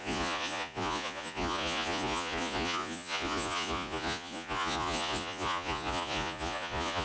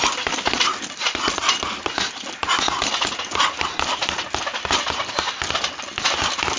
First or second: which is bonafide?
second